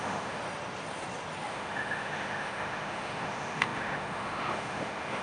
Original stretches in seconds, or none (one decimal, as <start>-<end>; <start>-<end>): 0.4-1.5